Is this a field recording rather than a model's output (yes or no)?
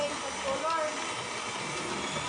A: yes